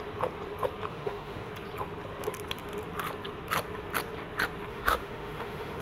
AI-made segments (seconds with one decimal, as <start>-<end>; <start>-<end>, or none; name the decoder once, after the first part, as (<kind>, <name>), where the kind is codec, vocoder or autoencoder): 0.9-1.5 (autoencoder, DAC-VAE); 4.7-5.8